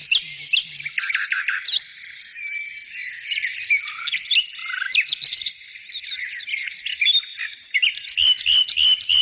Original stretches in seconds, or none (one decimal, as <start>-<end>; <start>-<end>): 0.0-9.2